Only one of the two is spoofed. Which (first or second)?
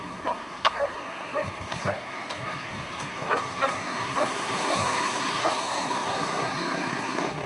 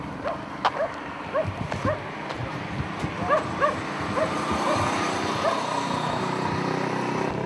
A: first